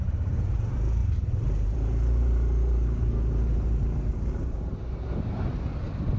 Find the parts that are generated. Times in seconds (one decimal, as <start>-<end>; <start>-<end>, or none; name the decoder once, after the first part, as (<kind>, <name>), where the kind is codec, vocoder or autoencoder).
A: 0.0-6.2 (vocoder, BigVGAN v2)